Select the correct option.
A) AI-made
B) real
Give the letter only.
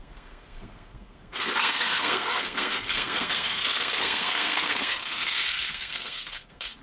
A